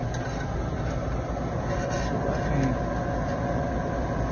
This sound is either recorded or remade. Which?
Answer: recorded